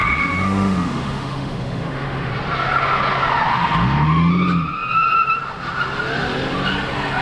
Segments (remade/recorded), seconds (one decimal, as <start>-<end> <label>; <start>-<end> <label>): 0.0-2.3 remade; 2.3-3.5 recorded; 3.5-4.3 remade; 4.3-7.2 recorded